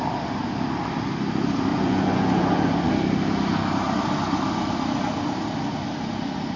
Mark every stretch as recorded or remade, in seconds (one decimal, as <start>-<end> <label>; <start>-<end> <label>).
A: 0.0-1.7 recorded; 1.7-2.9 remade; 2.9-6.6 recorded